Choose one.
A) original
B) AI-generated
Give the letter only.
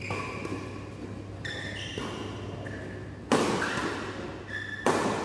A